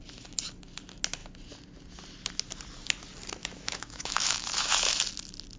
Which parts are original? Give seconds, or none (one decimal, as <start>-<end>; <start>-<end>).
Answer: 0.0-3.4; 5.0-5.6